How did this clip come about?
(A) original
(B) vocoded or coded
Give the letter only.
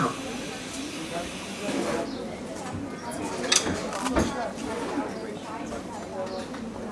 A